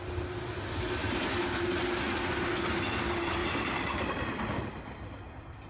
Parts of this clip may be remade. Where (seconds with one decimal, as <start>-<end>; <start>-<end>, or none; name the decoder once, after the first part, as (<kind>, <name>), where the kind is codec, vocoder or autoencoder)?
3.4-4.1 (vocoder, BigVGAN v2)